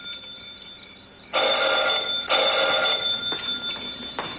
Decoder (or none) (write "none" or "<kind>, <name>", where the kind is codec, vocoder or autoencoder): none